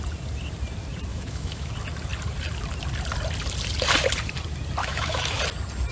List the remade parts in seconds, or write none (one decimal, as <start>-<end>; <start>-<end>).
1.1-1.7; 4.8-5.4